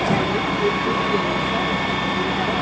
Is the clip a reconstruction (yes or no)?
no